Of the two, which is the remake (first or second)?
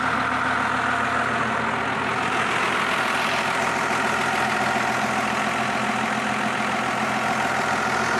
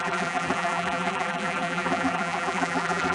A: second